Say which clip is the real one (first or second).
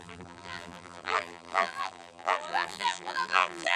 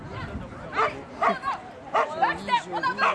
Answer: second